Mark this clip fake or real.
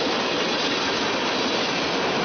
real